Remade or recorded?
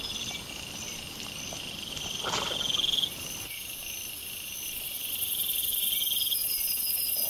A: recorded